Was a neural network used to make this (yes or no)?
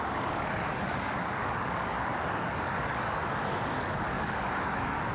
yes